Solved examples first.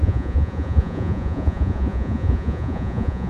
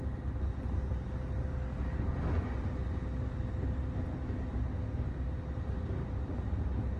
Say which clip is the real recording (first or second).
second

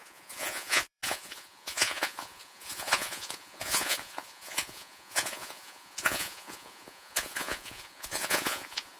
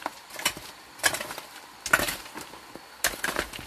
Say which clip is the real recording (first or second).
second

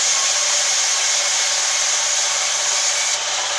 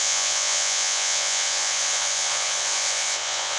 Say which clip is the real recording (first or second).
first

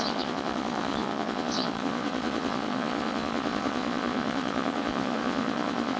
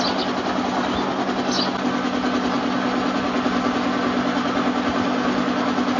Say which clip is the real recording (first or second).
second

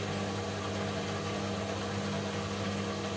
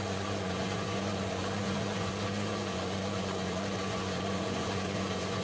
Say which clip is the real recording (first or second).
first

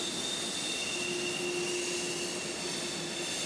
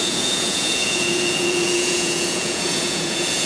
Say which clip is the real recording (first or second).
first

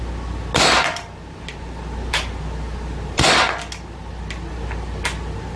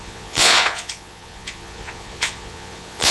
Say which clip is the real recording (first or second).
first